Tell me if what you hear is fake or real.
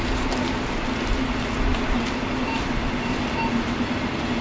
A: real